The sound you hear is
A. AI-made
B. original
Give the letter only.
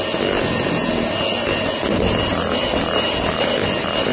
B